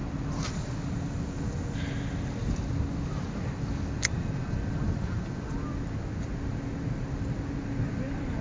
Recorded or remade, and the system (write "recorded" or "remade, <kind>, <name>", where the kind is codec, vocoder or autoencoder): recorded